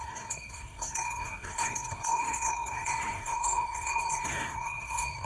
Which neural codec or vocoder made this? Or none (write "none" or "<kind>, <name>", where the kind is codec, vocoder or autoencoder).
codec, SNAC